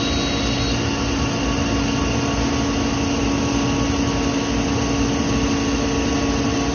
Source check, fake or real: real